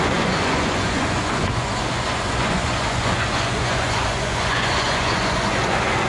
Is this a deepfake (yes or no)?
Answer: yes